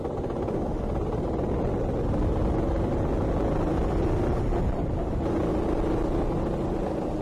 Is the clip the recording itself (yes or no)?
yes